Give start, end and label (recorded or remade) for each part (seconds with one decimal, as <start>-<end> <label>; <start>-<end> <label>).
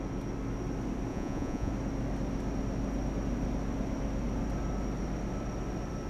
0.0-1.1 recorded; 1.1-1.7 remade; 1.7-6.1 recorded